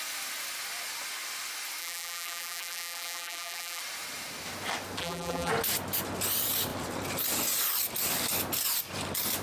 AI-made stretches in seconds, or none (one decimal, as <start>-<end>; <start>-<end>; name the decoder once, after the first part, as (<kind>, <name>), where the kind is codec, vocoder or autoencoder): 1.8-3.8 (vocoder, BigVGAN v2); 5.0-5.5